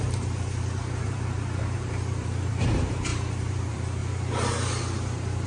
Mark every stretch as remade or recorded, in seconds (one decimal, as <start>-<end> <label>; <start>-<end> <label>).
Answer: 0.0-4.0 remade; 4.0-5.5 recorded